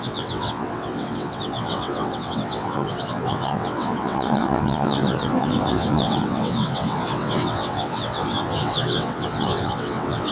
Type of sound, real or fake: fake